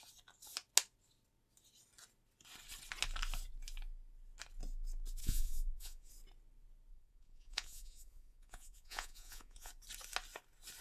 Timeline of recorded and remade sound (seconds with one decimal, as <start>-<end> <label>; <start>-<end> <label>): 0.0-5.2 recorded; 5.2-6.1 remade; 6.1-6.9 recorded; 6.9-9.7 remade; 9.7-10.8 recorded